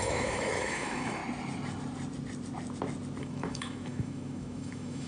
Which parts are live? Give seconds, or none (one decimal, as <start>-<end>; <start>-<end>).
1.2-3.2